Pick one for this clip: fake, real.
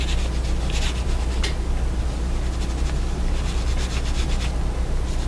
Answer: real